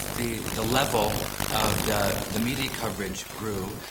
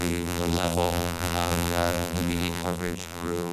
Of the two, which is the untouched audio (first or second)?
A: first